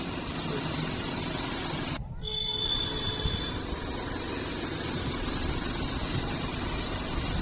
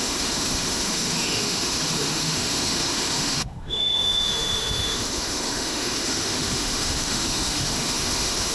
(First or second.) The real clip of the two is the first